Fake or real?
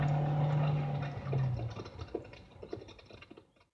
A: real